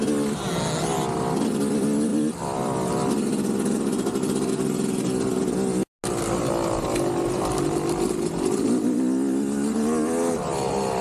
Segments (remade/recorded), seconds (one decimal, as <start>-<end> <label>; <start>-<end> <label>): 0.0-2.1 recorded; 2.1-2.9 remade; 2.9-11.0 recorded

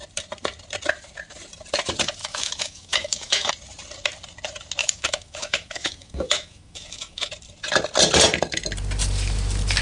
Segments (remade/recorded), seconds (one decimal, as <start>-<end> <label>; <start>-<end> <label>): 0.0-2.2 recorded; 2.2-3.5 remade; 3.5-4.8 recorded; 4.8-7.3 remade; 7.3-9.8 recorded

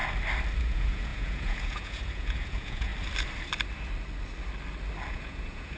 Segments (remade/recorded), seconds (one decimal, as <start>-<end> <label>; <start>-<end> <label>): 0.0-0.6 recorded; 0.6-2.9 remade; 2.9-5.1 recorded; 5.1-5.8 remade